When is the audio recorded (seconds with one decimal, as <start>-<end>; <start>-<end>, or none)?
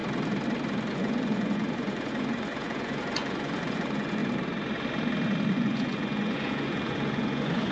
0.0-0.9; 4.2-5.5